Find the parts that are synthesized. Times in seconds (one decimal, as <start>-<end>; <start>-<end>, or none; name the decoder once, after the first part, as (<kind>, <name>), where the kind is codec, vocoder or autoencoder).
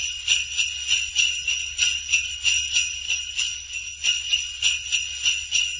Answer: 0.0-1.1 (vocoder, BigVGAN v2); 3.5-4.3